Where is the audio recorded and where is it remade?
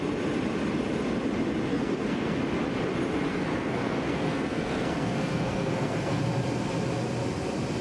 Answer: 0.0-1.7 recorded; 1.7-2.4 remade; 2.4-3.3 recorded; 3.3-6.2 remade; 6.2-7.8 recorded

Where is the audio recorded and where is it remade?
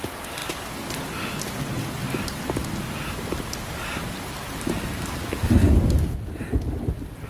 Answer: 0.0-7.3 recorded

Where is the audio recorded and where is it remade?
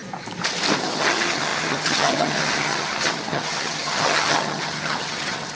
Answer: 0.0-0.8 recorded; 0.8-5.6 remade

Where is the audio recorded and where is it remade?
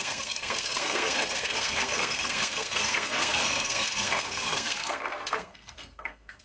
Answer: 0.0-6.4 remade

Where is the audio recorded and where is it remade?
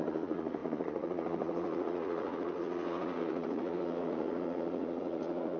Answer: 0.0-5.6 remade